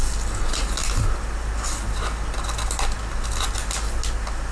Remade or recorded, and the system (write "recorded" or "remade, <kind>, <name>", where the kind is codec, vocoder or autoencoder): recorded